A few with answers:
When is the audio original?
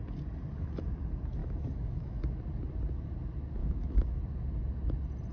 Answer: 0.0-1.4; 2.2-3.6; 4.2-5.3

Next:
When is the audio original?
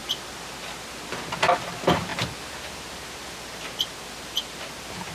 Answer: 0.0-5.1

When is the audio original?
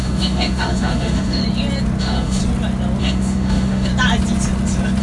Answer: 1.4-2.0; 2.4-3.0; 3.9-5.0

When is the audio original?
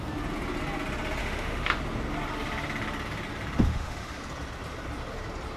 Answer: 0.0-1.2; 1.8-3.7; 4.2-5.6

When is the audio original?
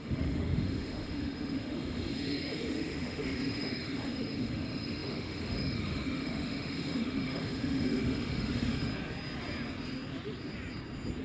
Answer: 8.9-11.2